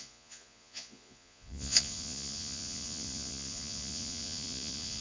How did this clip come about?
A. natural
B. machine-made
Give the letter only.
B